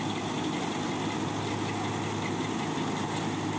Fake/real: real